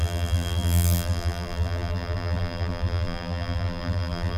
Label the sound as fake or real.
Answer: fake